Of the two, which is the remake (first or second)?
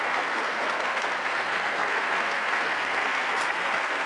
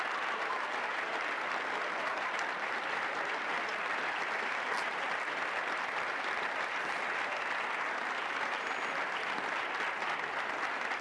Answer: first